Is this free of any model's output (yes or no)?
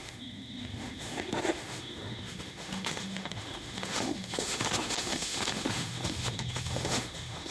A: no